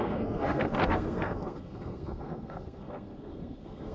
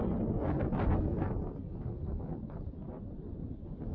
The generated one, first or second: first